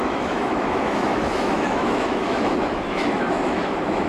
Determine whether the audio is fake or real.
fake